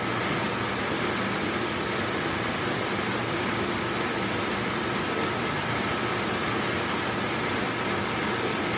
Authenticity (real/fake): real